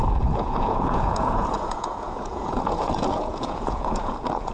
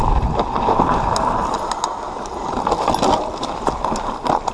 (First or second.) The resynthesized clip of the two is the first